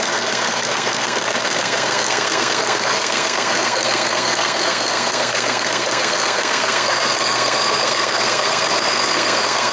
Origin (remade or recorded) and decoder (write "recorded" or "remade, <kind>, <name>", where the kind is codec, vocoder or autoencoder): remade, codec, SNAC